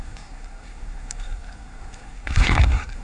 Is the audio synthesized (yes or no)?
yes